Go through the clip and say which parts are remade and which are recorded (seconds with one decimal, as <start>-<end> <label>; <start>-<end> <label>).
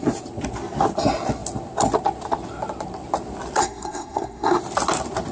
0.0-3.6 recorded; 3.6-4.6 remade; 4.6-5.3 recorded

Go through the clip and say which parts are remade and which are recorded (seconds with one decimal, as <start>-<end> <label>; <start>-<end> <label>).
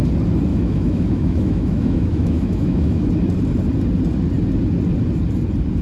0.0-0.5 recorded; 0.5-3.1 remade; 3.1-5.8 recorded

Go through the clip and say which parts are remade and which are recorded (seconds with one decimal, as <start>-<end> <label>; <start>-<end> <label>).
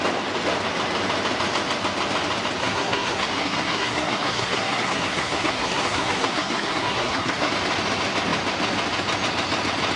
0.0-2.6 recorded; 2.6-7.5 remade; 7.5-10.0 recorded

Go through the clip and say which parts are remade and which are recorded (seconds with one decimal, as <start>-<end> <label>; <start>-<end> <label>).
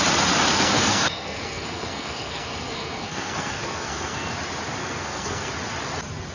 0.0-0.5 recorded; 0.5-4.3 remade; 4.3-4.8 recorded; 4.8-5.5 remade; 5.5-6.3 recorded